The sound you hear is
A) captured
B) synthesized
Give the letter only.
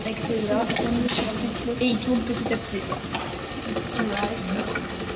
A